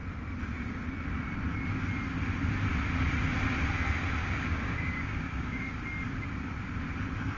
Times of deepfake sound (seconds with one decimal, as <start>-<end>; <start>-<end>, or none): 4.2-5.8